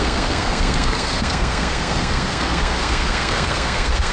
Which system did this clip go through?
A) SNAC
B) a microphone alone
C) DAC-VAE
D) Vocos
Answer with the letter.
A